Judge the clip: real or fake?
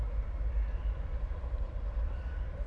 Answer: real